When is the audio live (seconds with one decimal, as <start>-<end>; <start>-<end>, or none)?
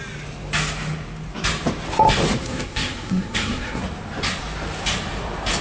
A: 0.0-2.4; 3.8-5.6